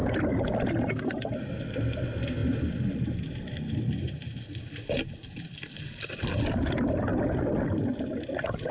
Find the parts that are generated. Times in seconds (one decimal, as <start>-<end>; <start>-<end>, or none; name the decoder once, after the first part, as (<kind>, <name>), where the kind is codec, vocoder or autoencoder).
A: none